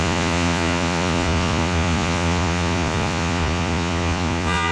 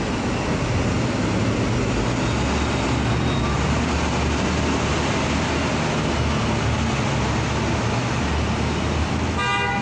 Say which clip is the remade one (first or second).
first